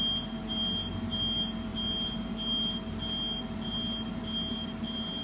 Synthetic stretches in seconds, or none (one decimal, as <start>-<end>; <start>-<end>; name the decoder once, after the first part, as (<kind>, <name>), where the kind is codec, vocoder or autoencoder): none

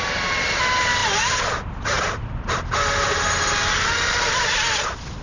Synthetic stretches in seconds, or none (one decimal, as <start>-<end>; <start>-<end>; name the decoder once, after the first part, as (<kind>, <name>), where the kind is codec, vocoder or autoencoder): none

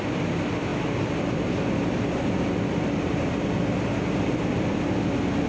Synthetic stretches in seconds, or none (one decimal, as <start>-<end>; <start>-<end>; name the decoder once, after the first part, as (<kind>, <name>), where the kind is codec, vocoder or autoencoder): none

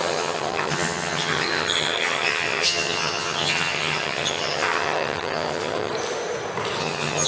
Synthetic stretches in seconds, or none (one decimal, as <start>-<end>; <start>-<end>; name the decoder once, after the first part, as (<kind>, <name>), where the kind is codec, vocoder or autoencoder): 0.0-5.9 (vocoder, HiFi-GAN); 6.8-7.3

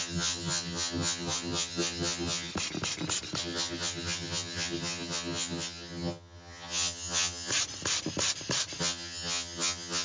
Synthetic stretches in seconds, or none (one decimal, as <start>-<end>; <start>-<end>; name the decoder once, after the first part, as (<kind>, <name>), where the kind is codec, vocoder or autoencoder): 0.0-2.5 (vocoder, HiFi-GAN); 3.4-7.5; 8.8-10.0

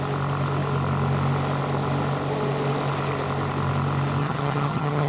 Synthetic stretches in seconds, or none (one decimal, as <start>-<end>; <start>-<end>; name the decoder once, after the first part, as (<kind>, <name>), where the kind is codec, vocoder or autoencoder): 4.2-5.1 (vocoder, HiFi-GAN)

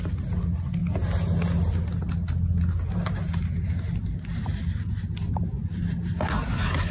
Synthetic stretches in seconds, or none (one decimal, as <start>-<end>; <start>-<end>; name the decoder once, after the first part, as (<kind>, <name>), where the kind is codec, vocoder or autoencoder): none

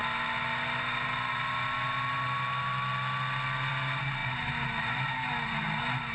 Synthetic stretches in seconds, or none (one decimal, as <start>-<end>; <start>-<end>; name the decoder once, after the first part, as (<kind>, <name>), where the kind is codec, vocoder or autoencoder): none